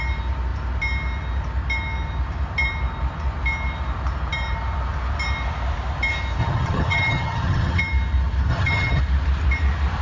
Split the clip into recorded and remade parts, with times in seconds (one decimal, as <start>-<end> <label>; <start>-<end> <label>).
0.0-6.4 recorded; 6.4-7.8 remade; 7.8-8.5 recorded; 8.5-9.0 remade; 9.0-10.0 recorded